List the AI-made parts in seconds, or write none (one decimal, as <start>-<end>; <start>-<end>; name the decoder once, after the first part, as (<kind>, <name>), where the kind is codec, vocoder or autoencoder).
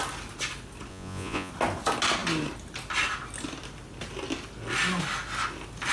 0.9-1.5 (vocoder, Vocos)